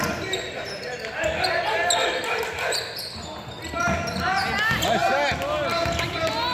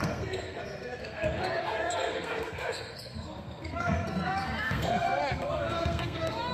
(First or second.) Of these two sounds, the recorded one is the first